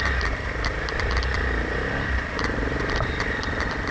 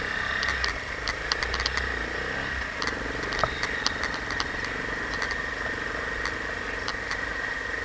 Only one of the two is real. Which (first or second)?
second